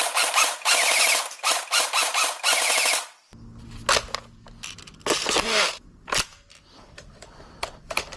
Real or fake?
real